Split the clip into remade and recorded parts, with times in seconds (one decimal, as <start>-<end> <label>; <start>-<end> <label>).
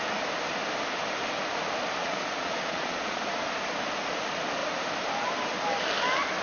0.0-2.0 recorded; 2.0-3.2 remade; 3.2-6.4 recorded